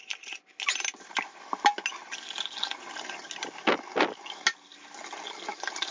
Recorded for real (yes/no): yes